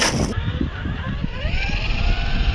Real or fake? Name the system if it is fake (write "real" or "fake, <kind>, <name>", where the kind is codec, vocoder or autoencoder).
real